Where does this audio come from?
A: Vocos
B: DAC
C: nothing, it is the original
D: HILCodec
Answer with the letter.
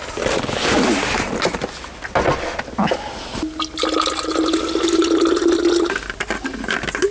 C